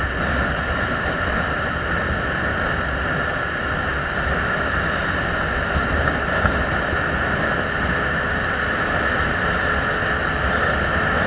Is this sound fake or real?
real